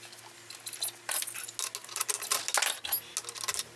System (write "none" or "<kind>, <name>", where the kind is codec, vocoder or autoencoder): none